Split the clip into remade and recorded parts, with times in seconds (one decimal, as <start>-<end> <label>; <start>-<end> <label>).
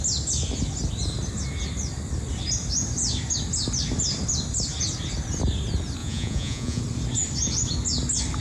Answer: 0.0-6.0 recorded; 6.0-6.8 remade; 6.8-8.4 recorded